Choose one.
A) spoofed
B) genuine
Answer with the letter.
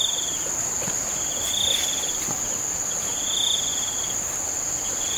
B